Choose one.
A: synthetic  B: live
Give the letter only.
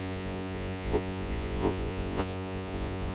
A